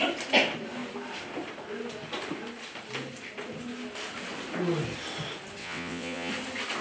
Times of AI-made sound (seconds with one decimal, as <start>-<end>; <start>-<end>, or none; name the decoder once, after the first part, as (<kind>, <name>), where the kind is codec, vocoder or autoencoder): 5.6-6.3 (vocoder, WaveNeXt)